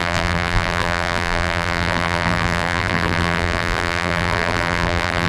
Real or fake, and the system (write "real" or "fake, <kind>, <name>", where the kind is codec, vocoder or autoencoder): fake, vocoder, BigVGAN v2